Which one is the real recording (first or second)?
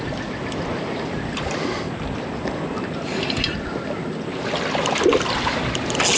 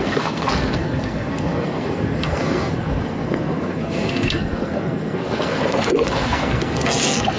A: first